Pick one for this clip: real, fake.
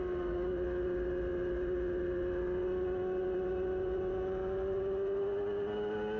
real